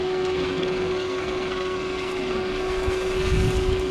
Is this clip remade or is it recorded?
remade